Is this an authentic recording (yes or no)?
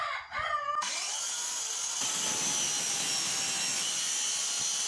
yes